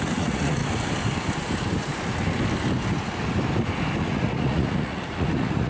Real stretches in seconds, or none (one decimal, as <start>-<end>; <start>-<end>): 0.6-4.0